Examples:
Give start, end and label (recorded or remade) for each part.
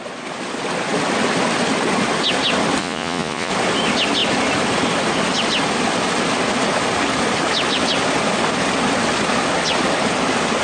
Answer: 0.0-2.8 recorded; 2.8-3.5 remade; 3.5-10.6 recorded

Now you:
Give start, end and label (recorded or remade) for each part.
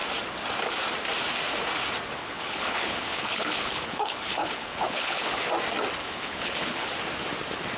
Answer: 0.0-2.2 recorded; 2.2-5.4 remade; 5.4-6.0 recorded; 6.0-6.9 remade; 6.9-7.8 recorded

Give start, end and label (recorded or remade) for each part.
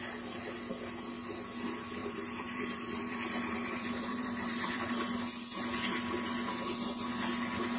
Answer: 0.0-2.0 recorded; 2.0-4.8 remade; 4.8-7.8 recorded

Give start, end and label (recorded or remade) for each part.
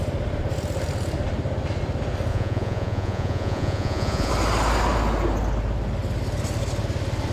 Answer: 0.0-2.3 recorded; 2.3-4.3 remade; 4.3-7.3 recorded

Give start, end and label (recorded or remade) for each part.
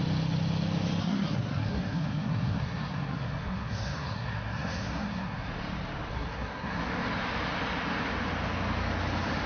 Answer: 0.0-1.0 recorded; 1.0-5.5 remade; 5.5-6.1 recorded; 6.1-6.8 remade; 6.8-9.5 recorded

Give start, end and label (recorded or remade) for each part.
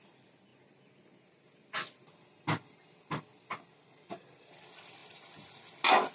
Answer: 0.0-6.1 recorded